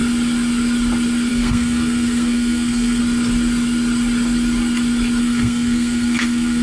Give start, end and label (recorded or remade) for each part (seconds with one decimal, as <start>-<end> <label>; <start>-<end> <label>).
0.0-1.3 recorded; 1.3-3.0 remade; 3.0-5.2 recorded; 5.2-6.6 remade